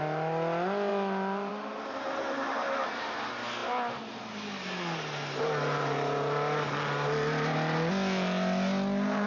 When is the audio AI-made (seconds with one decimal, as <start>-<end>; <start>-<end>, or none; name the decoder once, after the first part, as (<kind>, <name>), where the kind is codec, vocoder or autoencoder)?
none